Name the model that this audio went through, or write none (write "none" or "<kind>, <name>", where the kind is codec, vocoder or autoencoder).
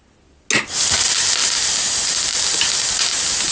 none